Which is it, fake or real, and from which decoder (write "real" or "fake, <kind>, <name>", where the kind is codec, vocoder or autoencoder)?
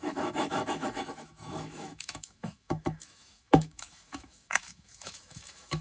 fake, autoencoder, DAC-VAE